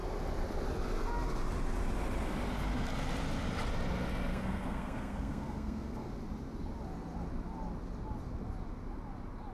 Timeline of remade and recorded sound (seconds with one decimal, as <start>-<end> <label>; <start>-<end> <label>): 0.0-4.3 recorded; 4.3-6.1 remade; 6.1-9.5 recorded